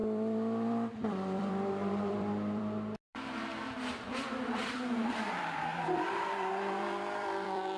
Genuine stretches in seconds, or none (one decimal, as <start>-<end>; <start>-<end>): none